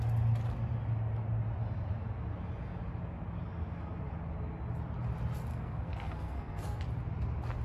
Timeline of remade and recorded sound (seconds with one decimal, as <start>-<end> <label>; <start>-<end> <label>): 0.0-5.5 recorded; 5.5-6.8 remade; 6.8-7.6 recorded

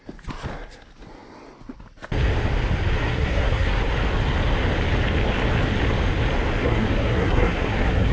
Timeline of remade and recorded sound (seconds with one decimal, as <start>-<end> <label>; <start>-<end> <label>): 0.0-3.0 recorded; 3.0-3.8 remade; 3.8-6.6 recorded; 6.6-8.1 remade

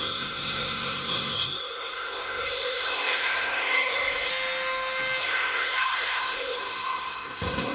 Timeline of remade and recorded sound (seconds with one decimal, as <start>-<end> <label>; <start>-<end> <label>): 0.0-4.3 remade; 4.3-5.2 recorded; 5.2-7.7 remade

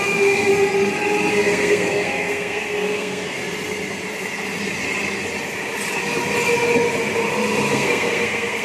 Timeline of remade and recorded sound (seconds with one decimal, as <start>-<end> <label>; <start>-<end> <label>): 0.0-0.5 remade; 0.5-1.3 recorded; 1.3-3.4 remade; 3.4-7.7 recorded; 7.7-8.6 remade

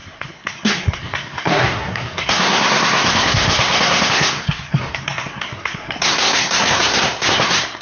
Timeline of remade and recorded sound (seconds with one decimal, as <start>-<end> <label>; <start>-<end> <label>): 0.0-7.8 remade